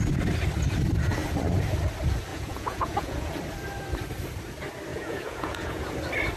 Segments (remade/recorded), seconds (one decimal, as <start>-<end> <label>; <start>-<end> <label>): 0.0-2.3 recorded; 2.3-3.3 remade; 3.3-4.9 recorded; 4.9-5.9 remade; 5.9-6.4 recorded

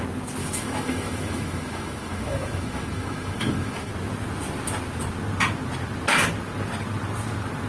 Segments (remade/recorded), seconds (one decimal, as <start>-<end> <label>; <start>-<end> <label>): 0.0-0.4 recorded; 0.4-3.9 remade; 3.9-7.7 recorded

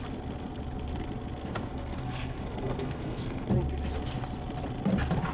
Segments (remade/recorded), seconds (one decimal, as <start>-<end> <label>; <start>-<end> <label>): 0.0-1.4 recorded; 1.4-3.5 remade; 3.5-5.3 recorded

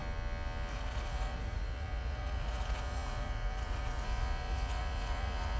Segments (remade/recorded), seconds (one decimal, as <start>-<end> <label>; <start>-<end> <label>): 0.0-0.7 recorded; 0.7-5.6 remade